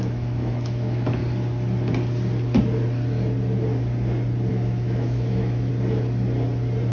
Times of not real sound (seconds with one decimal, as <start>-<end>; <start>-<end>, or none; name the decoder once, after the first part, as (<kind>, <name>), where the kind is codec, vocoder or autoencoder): 0.0-1.2 (autoencoder, DAC-VAE); 4.5-5.7

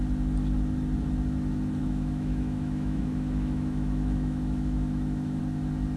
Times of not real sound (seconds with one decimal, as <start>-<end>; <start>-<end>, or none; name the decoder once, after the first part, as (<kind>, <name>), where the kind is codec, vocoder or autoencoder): 1.8-5.4 (autoencoder, DAC-VAE)

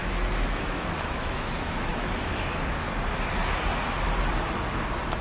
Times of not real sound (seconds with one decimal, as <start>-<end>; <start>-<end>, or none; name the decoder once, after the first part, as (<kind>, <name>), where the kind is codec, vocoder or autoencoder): 0.0-1.5 (autoencoder, DAC-VAE); 1.9-2.7

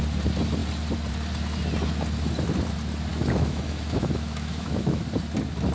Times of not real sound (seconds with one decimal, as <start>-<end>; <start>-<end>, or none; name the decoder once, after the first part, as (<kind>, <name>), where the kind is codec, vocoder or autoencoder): 3.1-5.0 (autoencoder, DAC-VAE)

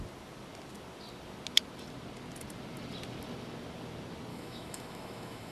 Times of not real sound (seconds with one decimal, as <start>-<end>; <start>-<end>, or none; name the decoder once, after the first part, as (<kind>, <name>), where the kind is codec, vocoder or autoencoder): 4.3-5.5 (autoencoder, DAC-VAE)